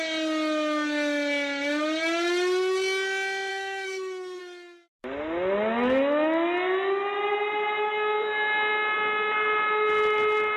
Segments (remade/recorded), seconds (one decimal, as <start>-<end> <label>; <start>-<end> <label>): 0.0-3.5 recorded; 3.5-4.4 remade; 4.4-10.6 recorded